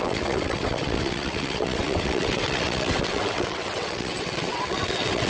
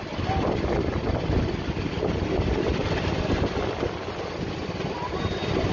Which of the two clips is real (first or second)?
second